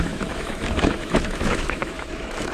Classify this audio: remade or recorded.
remade